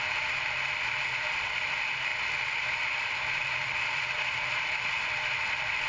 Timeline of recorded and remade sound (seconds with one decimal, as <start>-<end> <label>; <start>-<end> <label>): 0.0-5.9 recorded